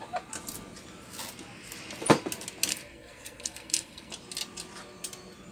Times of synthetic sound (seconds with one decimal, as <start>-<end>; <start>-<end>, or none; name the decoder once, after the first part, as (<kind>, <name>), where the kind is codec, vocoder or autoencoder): 2.7-4.1 (codec, SNAC)

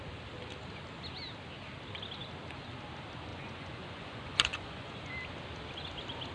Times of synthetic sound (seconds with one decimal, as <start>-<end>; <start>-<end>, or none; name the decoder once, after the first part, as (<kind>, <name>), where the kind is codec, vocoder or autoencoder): 3.3-5.1 (vocoder, Vocos)

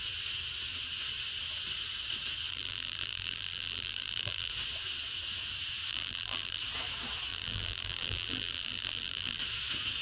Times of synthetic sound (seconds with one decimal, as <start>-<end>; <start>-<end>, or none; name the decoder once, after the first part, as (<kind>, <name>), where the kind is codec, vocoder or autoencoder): 2.5-4.5 (vocoder, BigVGAN v2); 5.9-6.6; 7.3-9.4